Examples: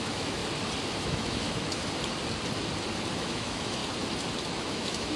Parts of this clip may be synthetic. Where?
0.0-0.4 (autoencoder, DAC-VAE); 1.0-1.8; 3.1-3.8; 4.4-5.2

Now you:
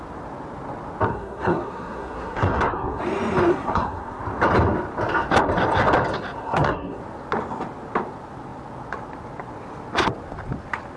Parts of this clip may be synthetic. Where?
1.1-3.0 (codec, SNAC); 3.5-4.2; 6.4-7.0